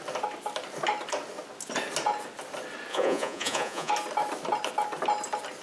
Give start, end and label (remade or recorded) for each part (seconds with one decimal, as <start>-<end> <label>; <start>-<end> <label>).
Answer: 0.0-2.9 recorded; 2.9-3.9 remade; 3.9-5.6 recorded